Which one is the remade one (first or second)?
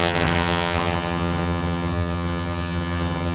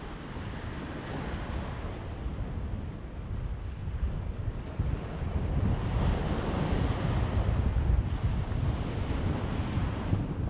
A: first